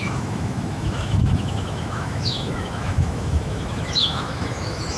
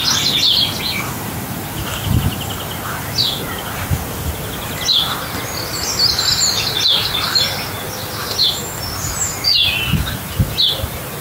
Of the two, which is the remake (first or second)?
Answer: first